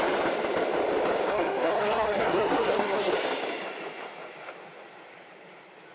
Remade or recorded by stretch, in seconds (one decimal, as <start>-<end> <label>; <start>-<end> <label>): 0.0-1.3 recorded; 1.3-3.1 remade; 3.1-5.9 recorded

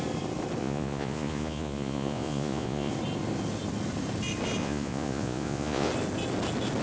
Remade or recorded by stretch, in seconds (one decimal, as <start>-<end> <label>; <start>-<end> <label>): 0.0-0.6 recorded; 0.6-2.9 remade; 2.9-4.6 recorded; 4.6-5.9 remade; 5.9-6.8 recorded

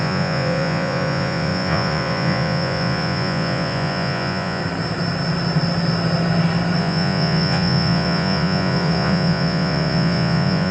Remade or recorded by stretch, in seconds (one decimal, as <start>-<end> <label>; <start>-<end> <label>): 0.0-4.6 remade; 4.6-6.8 recorded; 6.8-10.7 remade

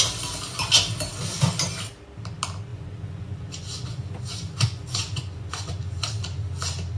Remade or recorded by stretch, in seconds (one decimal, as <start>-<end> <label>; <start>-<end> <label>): 0.0-2.7 recorded; 2.7-6.1 remade; 6.1-7.0 recorded

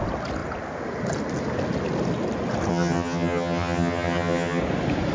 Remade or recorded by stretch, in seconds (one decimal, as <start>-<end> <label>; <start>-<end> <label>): 0.0-2.7 recorded; 2.7-4.6 remade; 4.6-5.1 recorded

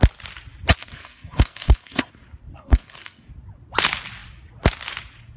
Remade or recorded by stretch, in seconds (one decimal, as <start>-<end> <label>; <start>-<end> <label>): 0.0-0.8 recorded; 0.8-2.1 remade; 2.1-2.5 recorded; 2.5-3.3 remade; 3.3-5.4 recorded

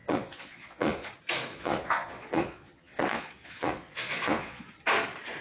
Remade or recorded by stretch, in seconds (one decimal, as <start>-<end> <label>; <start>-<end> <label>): 0.0-1.1 remade; 1.1-1.5 recorded; 1.5-4.7 remade; 4.7-5.4 recorded

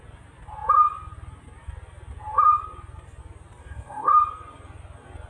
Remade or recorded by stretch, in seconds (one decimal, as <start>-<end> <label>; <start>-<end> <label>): 0.0-3.6 recorded; 3.6-4.1 remade; 4.1-5.3 recorded